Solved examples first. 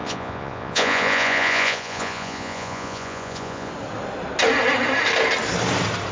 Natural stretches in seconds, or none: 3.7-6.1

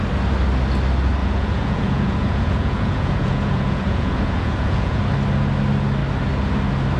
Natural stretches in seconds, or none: 0.0-1.2; 5.0-7.0

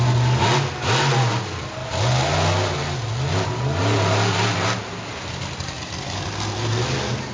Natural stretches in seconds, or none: 0.0-7.3

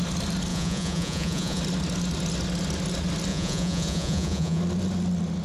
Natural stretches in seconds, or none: 0.0-0.5; 1.6-3.3; 4.6-5.4

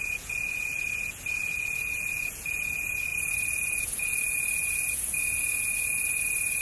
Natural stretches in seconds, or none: none

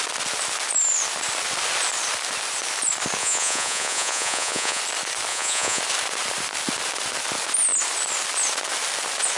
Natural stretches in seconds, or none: 0.0-3.2; 4.8-5.3; 5.8-9.4

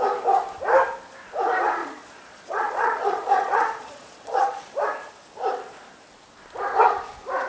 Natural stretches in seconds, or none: 0.0-1.8; 4.6-7.5

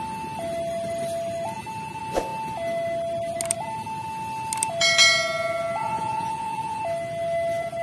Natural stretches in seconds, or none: 0.0-5.8; 6.8-7.8